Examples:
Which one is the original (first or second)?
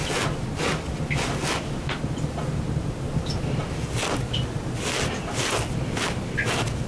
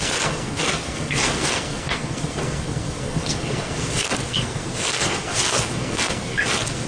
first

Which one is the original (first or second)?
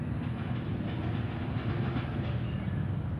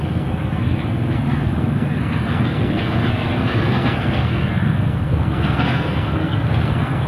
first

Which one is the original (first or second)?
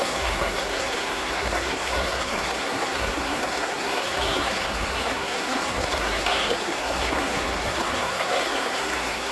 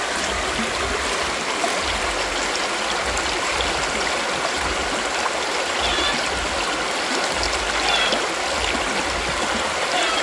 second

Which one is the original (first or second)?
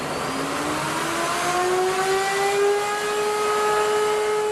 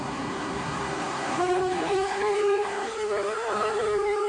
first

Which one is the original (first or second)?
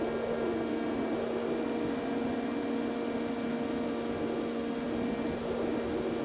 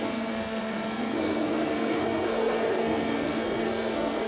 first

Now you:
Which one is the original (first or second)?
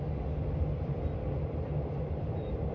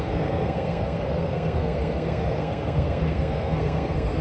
first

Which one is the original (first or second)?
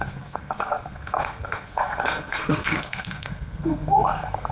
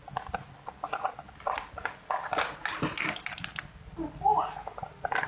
second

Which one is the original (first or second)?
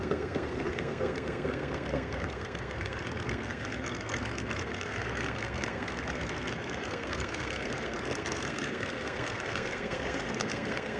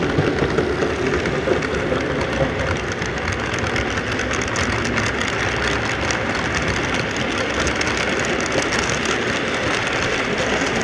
second